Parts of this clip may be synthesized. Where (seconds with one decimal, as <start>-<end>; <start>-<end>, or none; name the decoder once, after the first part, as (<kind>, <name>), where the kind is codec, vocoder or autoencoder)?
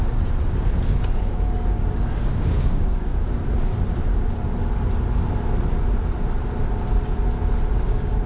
0.8-3.1 (codec, DAC); 7.7-8.3